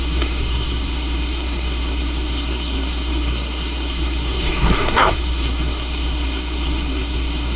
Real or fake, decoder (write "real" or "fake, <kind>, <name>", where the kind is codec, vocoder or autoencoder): fake, codec, SNAC